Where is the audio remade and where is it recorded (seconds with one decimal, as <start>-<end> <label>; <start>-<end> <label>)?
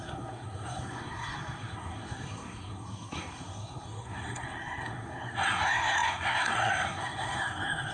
0.0-7.9 remade